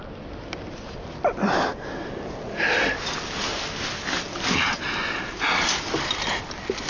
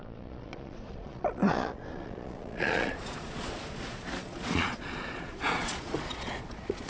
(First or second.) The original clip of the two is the first